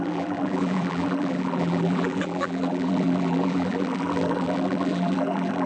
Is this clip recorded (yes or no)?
no